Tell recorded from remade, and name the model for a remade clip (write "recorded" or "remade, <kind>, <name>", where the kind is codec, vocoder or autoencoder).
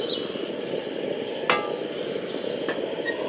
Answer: recorded